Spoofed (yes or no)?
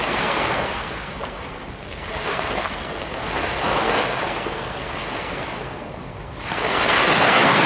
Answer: yes